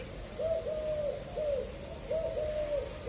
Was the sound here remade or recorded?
recorded